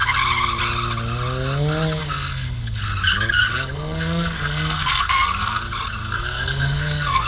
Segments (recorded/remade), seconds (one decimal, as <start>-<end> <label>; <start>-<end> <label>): 0.0-2.0 recorded; 2.0-2.8 remade; 2.8-3.5 recorded; 3.5-5.6 remade; 5.6-6.0 recorded; 6.0-7.3 remade